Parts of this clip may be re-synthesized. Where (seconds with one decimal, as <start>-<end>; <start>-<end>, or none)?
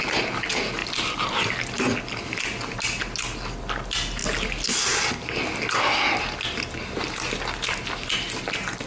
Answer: 0.8-1.5